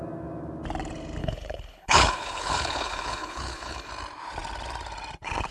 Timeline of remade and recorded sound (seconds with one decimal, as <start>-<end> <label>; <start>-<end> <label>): 0.0-1.2 recorded; 1.2-3.9 remade; 3.9-5.5 recorded